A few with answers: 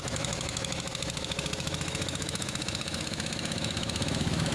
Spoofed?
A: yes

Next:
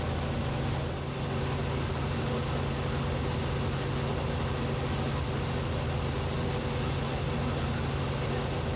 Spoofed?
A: no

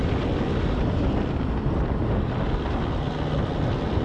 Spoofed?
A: no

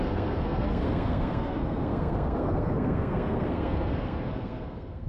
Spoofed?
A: yes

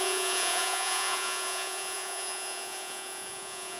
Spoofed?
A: yes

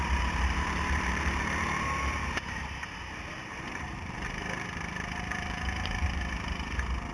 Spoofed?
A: yes